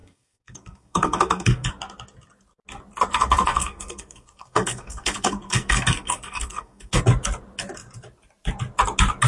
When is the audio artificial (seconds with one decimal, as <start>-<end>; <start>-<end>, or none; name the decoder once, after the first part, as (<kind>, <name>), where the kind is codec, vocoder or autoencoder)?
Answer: 0.0-1.7 (codec, SNAC); 3.1-7.0